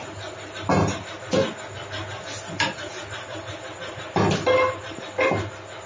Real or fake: real